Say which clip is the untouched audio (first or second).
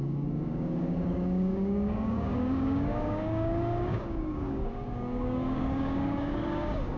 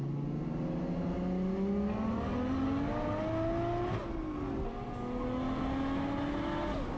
second